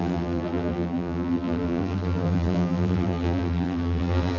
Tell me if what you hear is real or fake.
fake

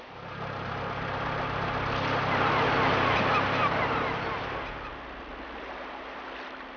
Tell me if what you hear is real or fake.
real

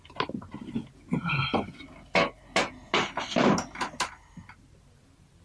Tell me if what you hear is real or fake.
real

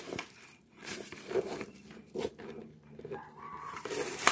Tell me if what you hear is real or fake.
fake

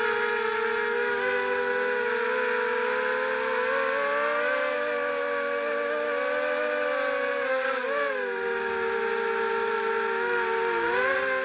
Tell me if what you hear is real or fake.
real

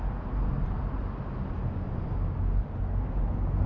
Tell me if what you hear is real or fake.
real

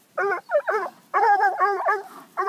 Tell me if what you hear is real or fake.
real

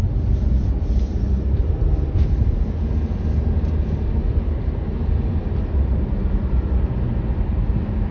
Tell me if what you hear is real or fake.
fake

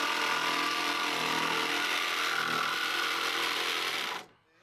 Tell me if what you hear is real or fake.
real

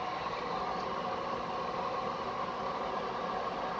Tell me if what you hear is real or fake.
real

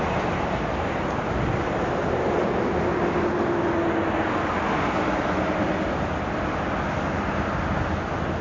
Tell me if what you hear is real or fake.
real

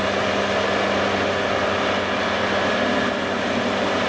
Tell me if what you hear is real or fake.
real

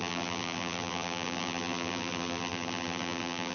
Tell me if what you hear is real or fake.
fake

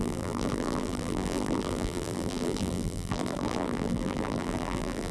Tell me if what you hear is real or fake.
fake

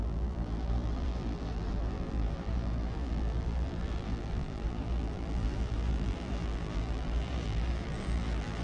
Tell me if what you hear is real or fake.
fake